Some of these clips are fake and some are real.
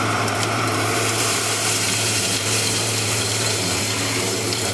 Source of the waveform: fake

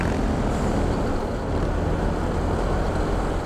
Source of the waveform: real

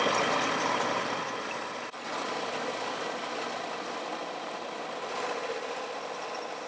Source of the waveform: real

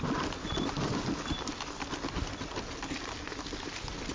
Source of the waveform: real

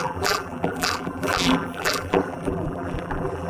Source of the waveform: fake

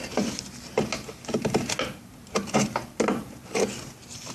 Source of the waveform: real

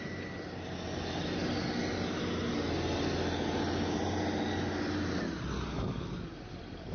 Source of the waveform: real